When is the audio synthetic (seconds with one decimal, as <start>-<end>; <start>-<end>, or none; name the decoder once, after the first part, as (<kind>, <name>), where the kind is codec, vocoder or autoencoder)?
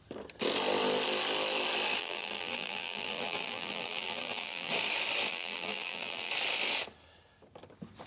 2.0-4.7 (vocoder, BigVGAN v2); 5.3-6.3